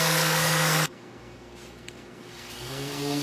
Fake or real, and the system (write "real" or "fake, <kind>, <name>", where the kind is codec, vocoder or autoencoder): fake, codec, SNAC